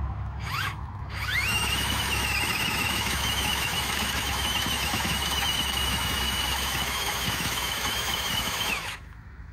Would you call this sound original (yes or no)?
no